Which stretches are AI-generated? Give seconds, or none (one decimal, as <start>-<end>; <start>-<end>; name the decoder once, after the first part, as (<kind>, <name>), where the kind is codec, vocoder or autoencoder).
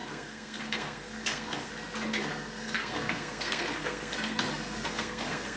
0.0-1.7 (codec, SNAC); 2.2-5.6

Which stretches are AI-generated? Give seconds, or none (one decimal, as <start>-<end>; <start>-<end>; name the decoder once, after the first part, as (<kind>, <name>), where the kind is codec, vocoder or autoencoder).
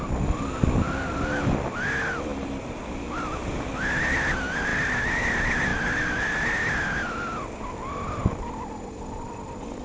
2.3-4.1 (vocoder, BigVGAN v2); 5.7-6.8; 8.2-9.8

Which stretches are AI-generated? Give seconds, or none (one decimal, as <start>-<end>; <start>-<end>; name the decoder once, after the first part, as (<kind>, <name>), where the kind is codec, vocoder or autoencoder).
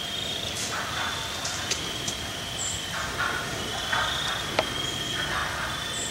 1.4-4.8 (vocoder, BigVGAN v2); 5.4-6.1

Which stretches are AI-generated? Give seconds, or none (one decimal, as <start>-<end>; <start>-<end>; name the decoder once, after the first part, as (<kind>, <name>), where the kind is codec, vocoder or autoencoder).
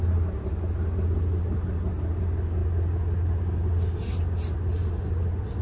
none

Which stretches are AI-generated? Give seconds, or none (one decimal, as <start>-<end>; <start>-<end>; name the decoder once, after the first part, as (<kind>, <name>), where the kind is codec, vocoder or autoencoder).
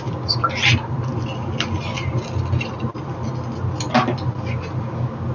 none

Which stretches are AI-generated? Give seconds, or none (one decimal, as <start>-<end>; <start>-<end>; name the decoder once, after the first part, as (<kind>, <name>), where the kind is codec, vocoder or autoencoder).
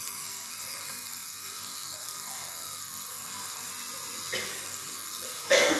0.0-3.7 (codec, SNAC); 4.5-5.8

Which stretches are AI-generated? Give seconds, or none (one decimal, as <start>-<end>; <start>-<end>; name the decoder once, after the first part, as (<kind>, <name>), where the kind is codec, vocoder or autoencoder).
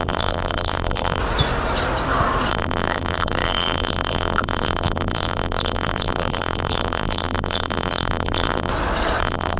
0.0-1.2 (vocoder, BigVGAN v2); 2.5-8.7; 9.2-9.6